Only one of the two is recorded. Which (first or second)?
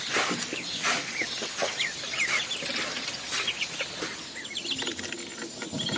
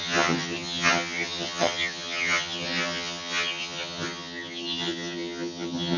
first